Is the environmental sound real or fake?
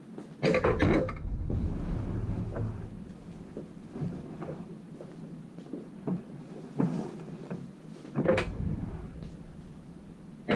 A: real